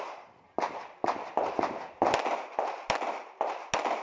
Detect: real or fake real